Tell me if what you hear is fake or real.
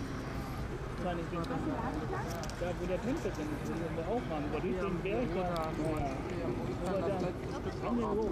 real